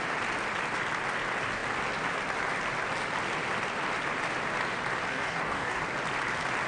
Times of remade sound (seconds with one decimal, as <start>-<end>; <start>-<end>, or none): 5.1-5.8